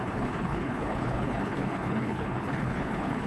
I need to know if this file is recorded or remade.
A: remade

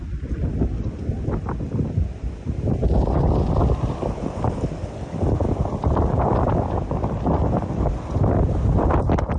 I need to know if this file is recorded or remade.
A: recorded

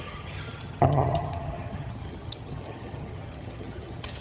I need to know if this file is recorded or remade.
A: remade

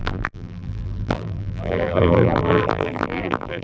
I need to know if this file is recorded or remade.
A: remade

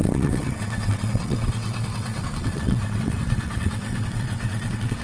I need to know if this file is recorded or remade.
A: remade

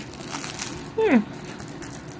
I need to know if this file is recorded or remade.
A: recorded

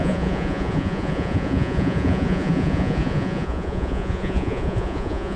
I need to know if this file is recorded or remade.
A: remade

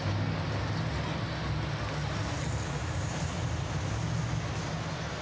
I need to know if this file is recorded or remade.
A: recorded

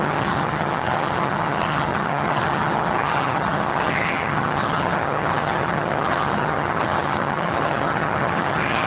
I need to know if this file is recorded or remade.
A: remade